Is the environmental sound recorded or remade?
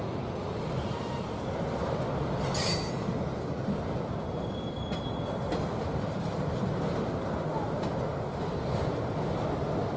recorded